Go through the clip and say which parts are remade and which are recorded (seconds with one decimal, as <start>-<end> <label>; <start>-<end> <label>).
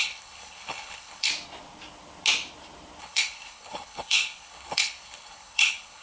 0.0-1.3 remade; 1.3-3.0 recorded; 3.0-6.0 remade